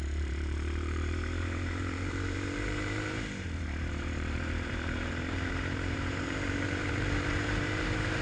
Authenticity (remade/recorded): remade